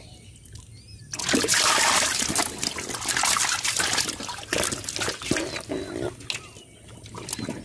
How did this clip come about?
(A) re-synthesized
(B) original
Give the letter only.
B